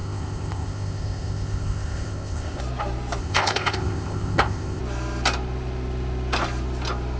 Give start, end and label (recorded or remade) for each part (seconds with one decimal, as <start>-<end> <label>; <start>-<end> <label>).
0.0-2.6 remade; 2.6-3.2 recorded; 3.2-4.8 remade; 4.8-7.2 recorded